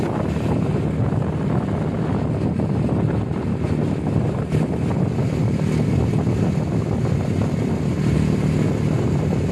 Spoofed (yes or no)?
no